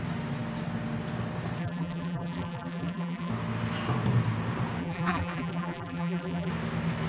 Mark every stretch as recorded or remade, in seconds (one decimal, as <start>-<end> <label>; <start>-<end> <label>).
0.0-1.6 recorded; 1.6-3.3 remade; 3.3-4.8 recorded; 4.8-6.5 remade; 6.5-7.1 recorded